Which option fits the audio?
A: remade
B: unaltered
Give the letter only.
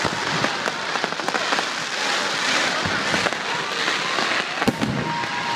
B